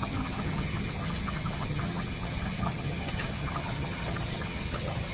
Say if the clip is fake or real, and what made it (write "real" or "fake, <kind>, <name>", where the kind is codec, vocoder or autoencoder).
fake, vocoder, HiFi-GAN